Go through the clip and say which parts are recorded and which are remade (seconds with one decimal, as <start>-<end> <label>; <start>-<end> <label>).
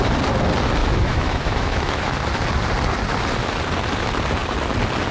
0.0-0.8 recorded; 0.8-2.1 remade; 2.1-5.1 recorded